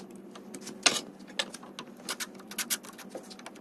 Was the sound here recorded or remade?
recorded